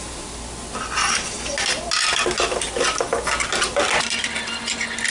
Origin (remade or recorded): recorded